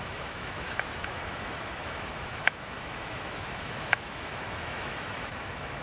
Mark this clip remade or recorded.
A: remade